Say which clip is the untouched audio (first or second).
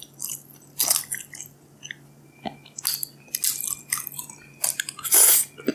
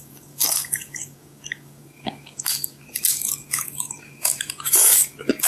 first